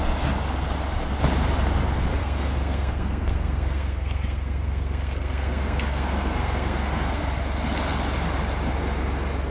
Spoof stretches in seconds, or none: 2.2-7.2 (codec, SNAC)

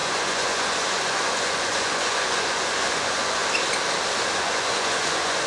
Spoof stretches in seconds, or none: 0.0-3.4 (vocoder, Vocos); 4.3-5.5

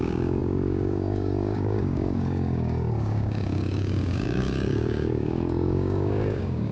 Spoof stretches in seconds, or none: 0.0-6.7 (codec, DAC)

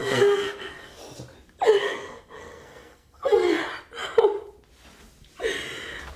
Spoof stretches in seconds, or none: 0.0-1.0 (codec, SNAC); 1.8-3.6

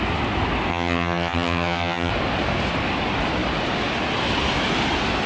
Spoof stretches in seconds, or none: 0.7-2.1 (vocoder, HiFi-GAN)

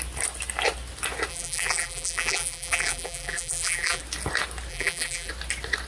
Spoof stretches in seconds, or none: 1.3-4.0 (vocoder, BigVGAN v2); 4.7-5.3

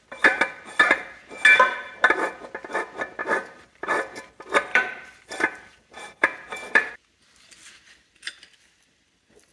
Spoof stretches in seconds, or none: 3.2-3.9 (vocoder, BigVGAN v2); 4.7-6.9